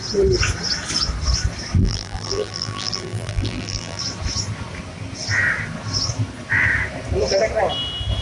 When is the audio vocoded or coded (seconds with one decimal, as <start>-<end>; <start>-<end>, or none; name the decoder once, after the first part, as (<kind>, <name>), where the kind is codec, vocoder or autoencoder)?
1.8-4.0 (vocoder, BigVGAN v2)